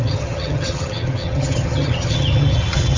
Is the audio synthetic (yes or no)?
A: yes